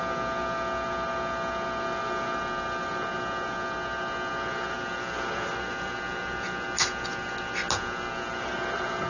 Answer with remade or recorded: recorded